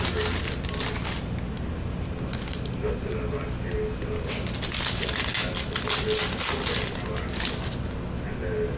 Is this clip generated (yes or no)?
no